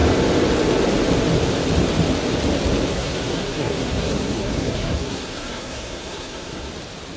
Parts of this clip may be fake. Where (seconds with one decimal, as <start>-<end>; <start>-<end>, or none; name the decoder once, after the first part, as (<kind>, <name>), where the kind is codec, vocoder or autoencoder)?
2.9-6.7 (codec, SNAC)